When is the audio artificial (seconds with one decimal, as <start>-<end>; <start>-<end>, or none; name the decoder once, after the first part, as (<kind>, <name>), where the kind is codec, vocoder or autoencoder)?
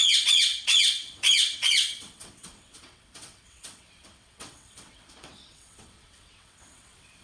0.0-7.2 (vocoder, WaveNeXt)